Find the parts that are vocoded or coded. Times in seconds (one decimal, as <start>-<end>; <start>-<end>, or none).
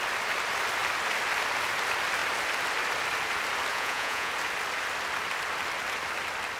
3.7-4.3